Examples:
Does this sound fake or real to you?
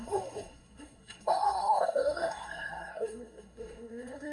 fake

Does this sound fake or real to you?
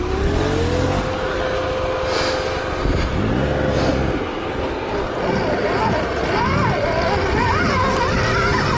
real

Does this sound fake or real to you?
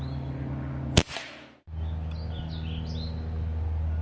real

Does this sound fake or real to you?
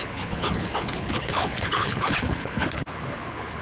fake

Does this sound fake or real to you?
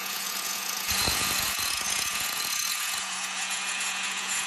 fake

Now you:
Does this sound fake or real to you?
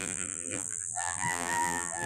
fake